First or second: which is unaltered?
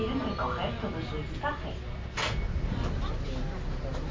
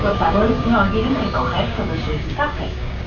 first